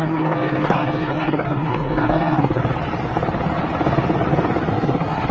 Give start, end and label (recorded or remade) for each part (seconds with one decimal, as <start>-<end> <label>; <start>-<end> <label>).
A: 0.0-2.6 remade; 2.6-4.7 recorded; 4.7-5.3 remade